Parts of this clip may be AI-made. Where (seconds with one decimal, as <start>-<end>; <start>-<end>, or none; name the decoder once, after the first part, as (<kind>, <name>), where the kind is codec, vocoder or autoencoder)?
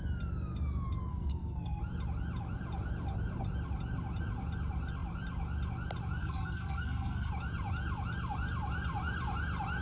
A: 1.1-1.8 (codec, SNAC); 6.2-7.3